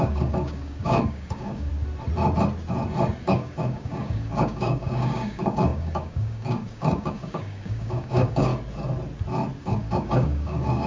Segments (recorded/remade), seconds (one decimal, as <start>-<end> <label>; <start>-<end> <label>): 0.0-1.7 remade; 1.7-3.2 recorded; 3.2-8.5 remade; 8.5-9.6 recorded; 9.6-10.9 remade